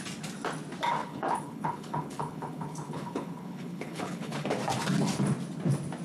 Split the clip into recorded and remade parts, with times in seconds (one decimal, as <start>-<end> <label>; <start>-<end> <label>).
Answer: 0.0-1.0 recorded; 1.0-4.5 remade; 4.5-6.0 recorded